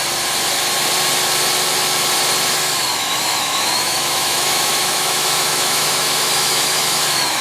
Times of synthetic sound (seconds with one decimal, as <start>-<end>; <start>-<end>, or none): 2.9-7.4